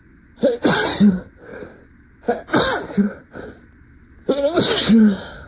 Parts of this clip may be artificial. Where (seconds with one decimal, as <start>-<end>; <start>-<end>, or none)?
none